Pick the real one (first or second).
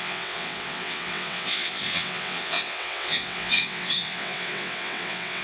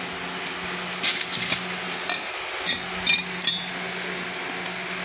second